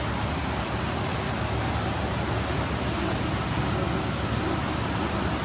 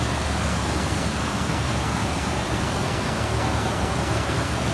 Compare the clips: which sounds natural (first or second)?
first